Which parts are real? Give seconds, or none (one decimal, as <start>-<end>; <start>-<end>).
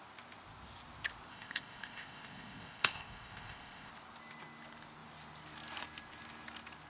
0.0-1.3; 3.9-6.9